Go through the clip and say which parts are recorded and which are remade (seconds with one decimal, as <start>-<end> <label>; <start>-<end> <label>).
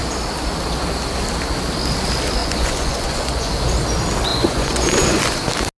0.0-2.4 recorded; 2.4-3.5 remade; 3.5-4.3 recorded; 4.3-5.2 remade; 5.2-5.8 recorded